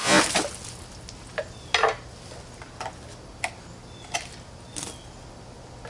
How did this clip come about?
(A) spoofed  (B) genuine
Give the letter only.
B